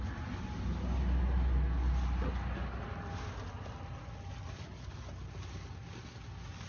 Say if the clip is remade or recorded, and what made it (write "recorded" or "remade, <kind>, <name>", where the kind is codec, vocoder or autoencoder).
recorded